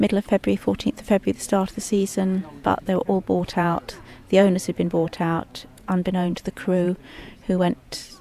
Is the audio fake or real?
fake